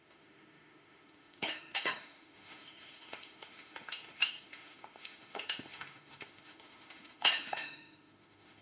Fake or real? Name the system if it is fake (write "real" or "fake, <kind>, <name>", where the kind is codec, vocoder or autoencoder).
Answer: fake, autoencoder, DAC-VAE